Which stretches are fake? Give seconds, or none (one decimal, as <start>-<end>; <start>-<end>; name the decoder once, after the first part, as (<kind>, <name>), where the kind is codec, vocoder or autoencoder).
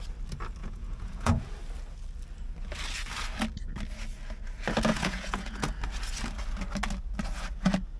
0.6-1.4 (vocoder, Vocos); 4.9-5.7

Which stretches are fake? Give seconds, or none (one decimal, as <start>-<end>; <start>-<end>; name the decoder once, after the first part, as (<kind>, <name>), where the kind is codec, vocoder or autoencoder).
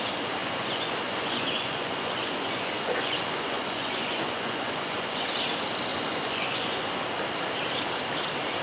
0.4-5.3 (vocoder, Vocos); 5.9-6.9